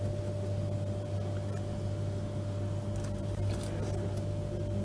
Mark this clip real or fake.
real